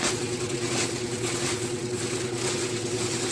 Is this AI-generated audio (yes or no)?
yes